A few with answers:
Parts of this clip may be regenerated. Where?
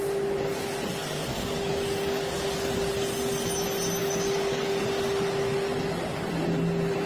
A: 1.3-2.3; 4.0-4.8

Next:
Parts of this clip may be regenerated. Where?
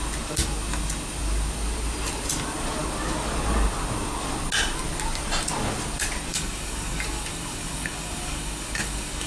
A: 6.3-9.3